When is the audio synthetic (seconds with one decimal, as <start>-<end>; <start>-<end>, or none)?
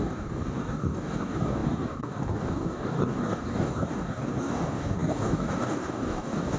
0.0-6.6